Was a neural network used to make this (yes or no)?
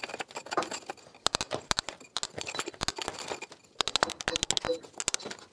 no